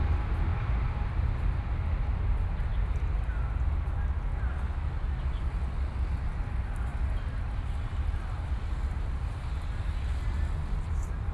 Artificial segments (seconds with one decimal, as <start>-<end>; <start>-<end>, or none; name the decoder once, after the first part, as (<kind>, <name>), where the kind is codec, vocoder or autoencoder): none